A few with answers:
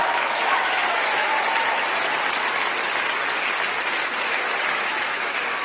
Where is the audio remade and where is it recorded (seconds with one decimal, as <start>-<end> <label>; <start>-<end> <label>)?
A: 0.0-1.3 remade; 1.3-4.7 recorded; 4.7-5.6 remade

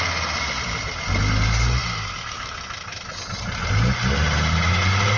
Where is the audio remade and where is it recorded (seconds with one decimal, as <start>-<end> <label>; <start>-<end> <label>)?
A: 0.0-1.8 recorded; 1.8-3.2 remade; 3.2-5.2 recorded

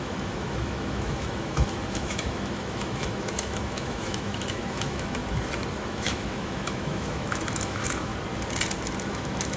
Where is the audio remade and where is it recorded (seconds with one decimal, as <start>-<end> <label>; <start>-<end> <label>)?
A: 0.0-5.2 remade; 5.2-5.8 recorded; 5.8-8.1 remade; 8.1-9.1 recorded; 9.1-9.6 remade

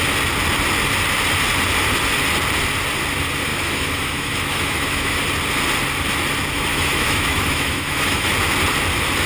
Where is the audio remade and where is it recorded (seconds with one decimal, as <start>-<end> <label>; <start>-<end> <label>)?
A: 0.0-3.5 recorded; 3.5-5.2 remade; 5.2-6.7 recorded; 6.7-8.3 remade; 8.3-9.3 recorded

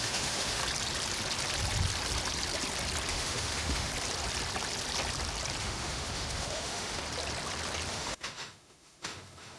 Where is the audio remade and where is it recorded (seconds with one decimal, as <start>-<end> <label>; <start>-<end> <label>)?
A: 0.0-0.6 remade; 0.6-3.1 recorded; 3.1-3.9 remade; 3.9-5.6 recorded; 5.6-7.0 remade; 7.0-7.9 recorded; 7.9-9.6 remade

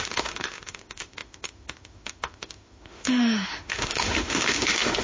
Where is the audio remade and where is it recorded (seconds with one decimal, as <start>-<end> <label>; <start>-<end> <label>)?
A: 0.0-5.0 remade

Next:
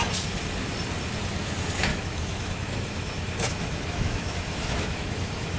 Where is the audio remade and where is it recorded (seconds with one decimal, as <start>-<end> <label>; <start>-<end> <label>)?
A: 0.0-1.9 recorded; 1.9-5.6 remade